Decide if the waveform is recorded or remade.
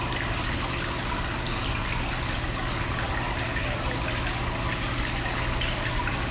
recorded